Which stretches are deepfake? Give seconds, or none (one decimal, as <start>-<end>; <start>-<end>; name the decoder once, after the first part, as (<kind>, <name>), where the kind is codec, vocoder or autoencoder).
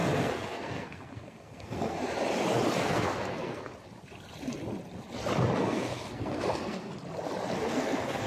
0.0-2.0 (codec, SNAC); 2.8-3.7; 5.6-6.9; 7.7-8.3